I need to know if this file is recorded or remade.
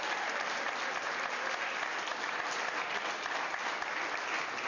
recorded